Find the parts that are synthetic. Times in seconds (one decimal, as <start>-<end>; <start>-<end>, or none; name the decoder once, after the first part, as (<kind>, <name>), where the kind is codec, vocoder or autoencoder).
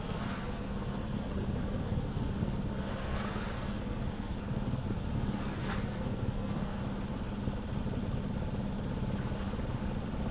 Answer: 0.0-6.8 (codec, SNAC)